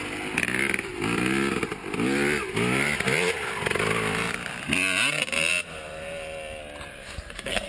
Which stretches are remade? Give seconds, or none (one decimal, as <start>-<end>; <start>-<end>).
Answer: 6.9-7.7